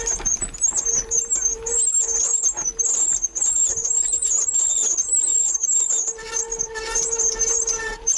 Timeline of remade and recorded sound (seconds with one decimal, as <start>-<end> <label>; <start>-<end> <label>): 0.0-8.2 recorded

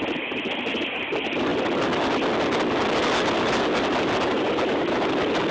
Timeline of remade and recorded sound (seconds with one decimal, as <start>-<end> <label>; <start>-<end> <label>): 0.0-5.5 recorded

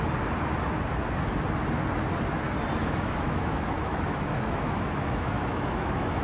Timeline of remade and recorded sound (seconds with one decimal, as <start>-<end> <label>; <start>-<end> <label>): 0.0-2.8 recorded; 2.8-6.2 remade

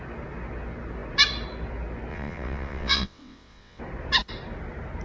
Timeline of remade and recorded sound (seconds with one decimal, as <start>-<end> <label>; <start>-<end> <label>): 0.0-2.1 recorded; 2.1-3.8 remade; 3.8-5.0 recorded

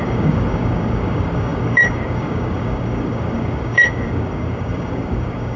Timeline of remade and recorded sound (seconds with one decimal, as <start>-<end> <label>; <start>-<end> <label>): 0.0-5.6 remade